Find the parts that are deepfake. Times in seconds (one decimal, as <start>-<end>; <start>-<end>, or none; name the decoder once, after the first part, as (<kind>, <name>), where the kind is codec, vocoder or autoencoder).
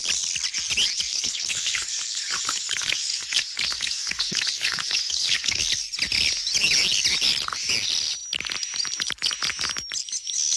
1.1-5.6 (codec, HILCodec)